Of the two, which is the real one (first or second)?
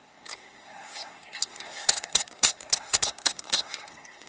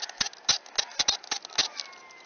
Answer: second